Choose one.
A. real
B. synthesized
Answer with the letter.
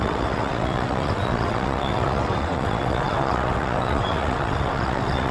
B